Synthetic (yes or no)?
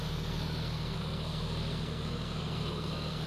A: yes